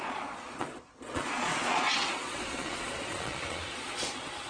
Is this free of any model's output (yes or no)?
no